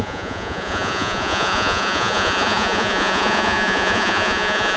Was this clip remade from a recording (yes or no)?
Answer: yes